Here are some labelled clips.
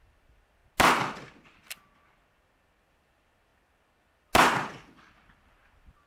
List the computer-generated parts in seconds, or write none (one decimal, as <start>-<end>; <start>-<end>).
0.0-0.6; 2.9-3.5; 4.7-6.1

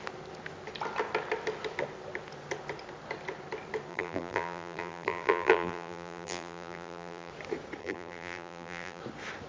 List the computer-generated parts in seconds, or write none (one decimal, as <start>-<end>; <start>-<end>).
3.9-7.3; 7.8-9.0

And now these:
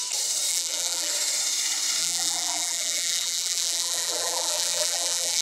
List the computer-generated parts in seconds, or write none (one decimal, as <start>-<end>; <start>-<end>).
0.5-1.1; 2.0-5.4

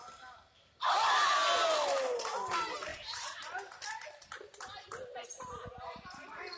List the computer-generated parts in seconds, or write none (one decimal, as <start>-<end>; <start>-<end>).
0.0-1.3; 2.9-4.6